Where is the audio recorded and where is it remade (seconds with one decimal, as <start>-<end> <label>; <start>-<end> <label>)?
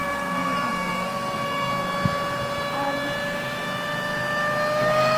0.0-1.7 remade; 1.7-4.8 recorded; 4.8-5.2 remade